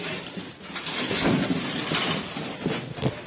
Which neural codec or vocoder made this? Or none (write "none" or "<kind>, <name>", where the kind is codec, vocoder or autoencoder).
none